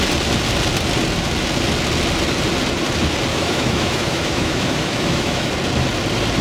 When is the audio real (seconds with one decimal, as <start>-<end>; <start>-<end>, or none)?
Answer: 0.0-3.3; 5.5-6.4

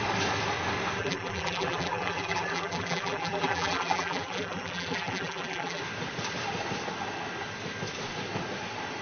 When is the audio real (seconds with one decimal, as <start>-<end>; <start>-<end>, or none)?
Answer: 0.0-1.0; 5.8-9.0